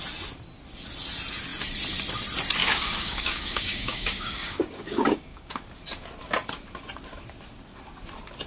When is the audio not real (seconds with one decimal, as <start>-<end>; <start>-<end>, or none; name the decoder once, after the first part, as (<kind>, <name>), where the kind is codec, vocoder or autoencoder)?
2.6-5.5 (codec, DAC)